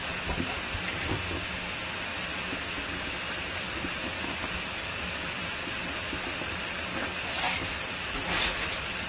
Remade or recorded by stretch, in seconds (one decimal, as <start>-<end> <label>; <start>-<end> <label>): 0.0-2.1 recorded; 2.1-5.8 remade; 5.8-9.1 recorded